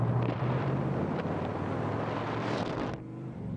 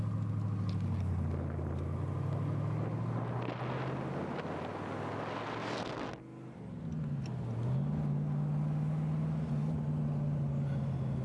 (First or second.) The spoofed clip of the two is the first